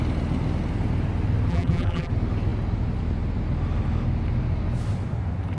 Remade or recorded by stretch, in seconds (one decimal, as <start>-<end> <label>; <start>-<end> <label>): 0.0-1.5 recorded; 1.5-2.1 remade; 2.1-5.6 recorded